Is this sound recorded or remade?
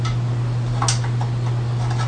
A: recorded